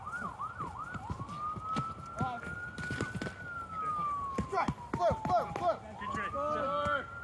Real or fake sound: real